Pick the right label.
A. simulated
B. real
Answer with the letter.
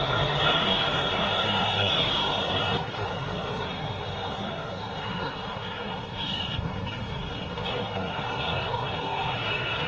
A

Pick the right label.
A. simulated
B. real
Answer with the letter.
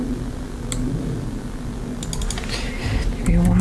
B